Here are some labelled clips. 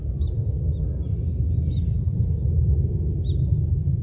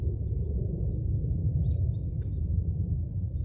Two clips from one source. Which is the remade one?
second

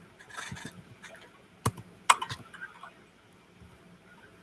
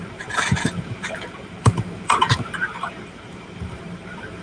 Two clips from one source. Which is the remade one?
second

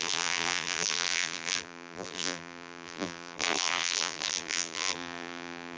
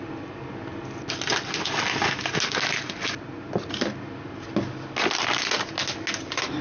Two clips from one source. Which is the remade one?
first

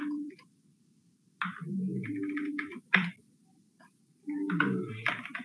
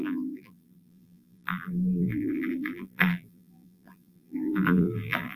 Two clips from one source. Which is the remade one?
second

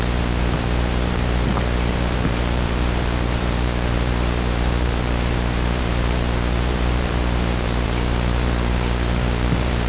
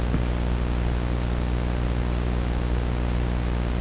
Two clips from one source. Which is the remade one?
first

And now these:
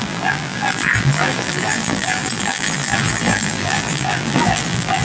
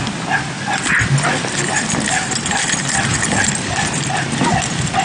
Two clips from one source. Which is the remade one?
first